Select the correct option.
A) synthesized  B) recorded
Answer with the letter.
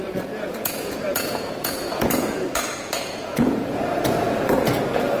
A